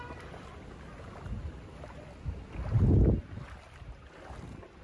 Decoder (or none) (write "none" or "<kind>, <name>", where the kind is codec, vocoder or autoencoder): none